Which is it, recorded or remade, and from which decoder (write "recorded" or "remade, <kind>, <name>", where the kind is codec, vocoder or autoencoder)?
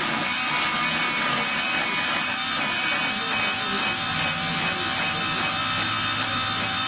recorded